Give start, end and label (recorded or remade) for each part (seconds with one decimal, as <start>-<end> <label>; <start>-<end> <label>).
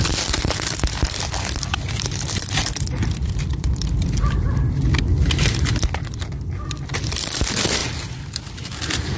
0.0-9.2 recorded